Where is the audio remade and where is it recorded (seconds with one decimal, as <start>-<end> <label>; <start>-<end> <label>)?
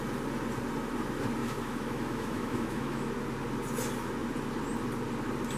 0.0-1.4 recorded; 1.4-3.1 remade; 3.1-5.6 recorded